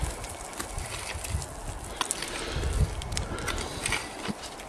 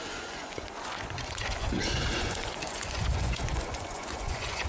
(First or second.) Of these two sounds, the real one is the first